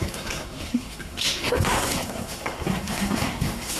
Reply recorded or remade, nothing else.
remade